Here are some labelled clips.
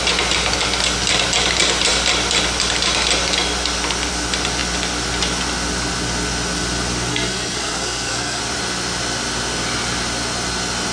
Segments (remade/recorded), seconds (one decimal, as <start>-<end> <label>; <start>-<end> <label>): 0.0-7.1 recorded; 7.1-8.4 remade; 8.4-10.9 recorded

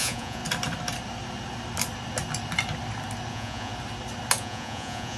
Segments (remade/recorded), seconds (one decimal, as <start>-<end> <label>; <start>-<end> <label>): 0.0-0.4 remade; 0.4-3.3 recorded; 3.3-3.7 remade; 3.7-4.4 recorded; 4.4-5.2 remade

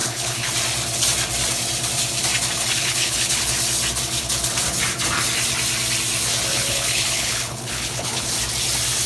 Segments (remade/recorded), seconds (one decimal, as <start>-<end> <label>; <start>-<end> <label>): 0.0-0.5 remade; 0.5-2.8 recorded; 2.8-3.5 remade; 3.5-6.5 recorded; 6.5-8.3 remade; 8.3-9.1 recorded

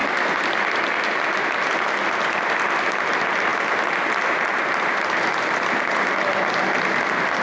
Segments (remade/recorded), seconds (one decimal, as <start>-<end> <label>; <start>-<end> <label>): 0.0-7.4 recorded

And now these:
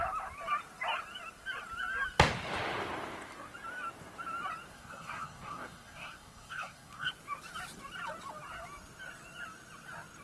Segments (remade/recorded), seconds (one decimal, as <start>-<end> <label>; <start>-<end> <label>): 0.0-4.7 recorded; 4.7-7.1 remade; 7.1-10.2 recorded

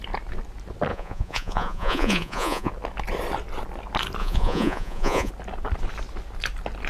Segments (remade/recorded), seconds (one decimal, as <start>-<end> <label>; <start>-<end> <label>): 0.0-0.9 recorded; 0.9-2.7 remade; 2.7-4.2 recorded; 4.2-5.3 remade; 5.3-6.9 recorded

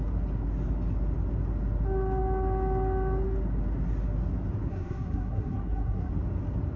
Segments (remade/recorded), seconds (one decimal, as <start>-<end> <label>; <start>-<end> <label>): 0.0-4.7 recorded; 4.7-6.1 remade; 6.1-6.8 recorded